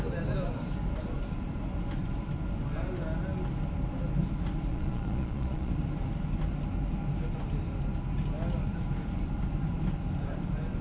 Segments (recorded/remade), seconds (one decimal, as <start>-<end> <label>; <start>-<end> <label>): 0.0-4.7 recorded; 4.7-5.7 remade; 5.7-10.8 recorded